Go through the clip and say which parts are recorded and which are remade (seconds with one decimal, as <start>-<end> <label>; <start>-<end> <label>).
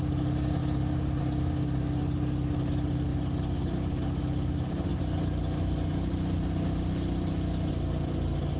0.0-8.6 recorded